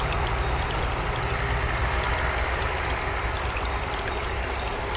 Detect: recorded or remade recorded